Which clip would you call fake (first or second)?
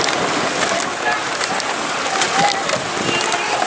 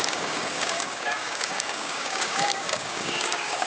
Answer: second